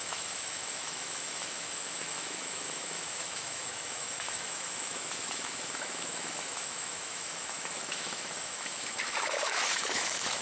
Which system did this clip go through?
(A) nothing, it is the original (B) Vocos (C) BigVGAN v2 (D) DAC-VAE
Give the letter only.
D